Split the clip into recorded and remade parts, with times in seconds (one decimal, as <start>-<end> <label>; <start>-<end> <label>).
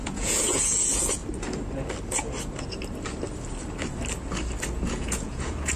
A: 0.0-1.2 remade; 1.2-4.7 recorded; 4.7-5.8 remade